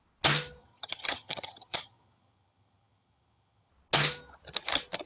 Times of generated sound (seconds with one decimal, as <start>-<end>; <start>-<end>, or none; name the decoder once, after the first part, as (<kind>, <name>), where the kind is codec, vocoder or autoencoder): 0.6-3.7 (vocoder, HiFi-GAN)